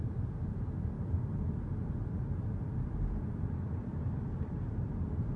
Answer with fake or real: real